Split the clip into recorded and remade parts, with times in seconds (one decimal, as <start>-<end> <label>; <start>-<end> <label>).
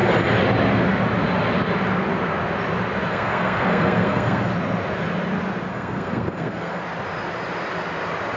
0.0-3.1 recorded; 3.1-4.5 remade; 4.5-5.7 recorded; 5.7-6.8 remade; 6.8-8.4 recorded